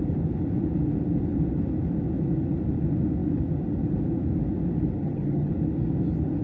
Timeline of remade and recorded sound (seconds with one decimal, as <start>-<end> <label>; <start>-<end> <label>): 0.0-5.0 recorded; 5.0-5.5 remade; 5.5-6.4 recorded